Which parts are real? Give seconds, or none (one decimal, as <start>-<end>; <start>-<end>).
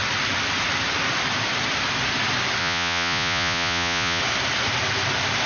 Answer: 0.0-2.6; 4.2-5.5